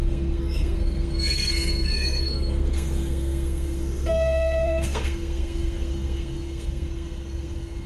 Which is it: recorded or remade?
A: remade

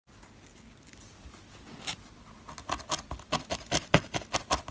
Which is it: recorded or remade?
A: recorded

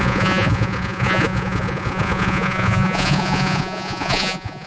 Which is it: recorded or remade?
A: remade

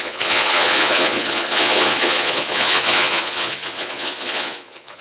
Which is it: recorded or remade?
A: remade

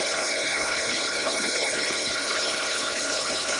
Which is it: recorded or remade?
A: remade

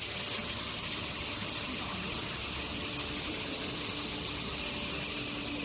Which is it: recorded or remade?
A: recorded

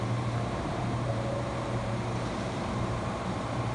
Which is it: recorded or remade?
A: remade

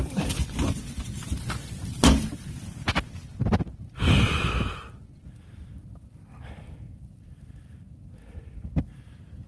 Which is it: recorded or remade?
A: recorded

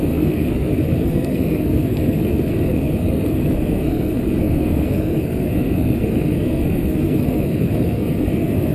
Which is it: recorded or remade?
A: remade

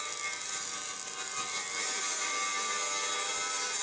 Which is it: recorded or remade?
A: recorded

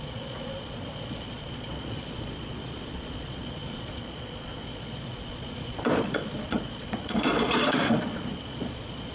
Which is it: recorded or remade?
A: remade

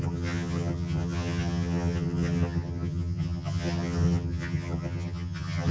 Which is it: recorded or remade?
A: remade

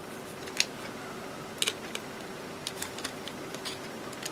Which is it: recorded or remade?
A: recorded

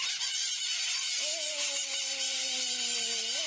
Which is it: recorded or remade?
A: recorded